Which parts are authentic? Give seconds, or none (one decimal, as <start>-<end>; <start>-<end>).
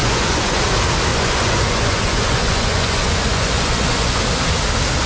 0.6-1.1; 4.2-5.1